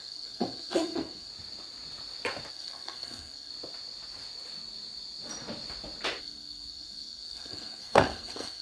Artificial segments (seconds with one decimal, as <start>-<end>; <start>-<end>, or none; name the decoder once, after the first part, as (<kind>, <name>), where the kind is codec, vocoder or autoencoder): 0.0-1.3 (codec, SNAC); 2.5-3.5; 6.2-8.6